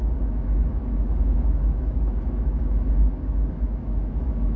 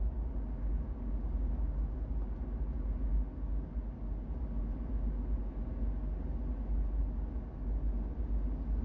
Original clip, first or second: second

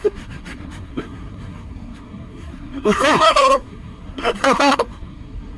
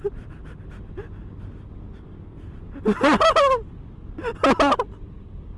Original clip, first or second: second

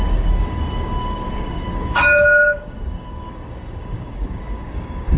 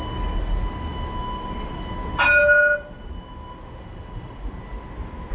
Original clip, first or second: second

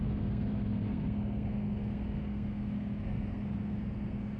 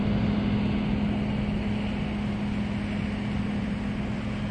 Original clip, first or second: second